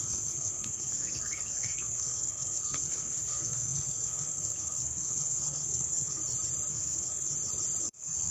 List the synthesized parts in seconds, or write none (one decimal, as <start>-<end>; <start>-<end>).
0.0-6.2; 6.7-7.3; 7.8-8.3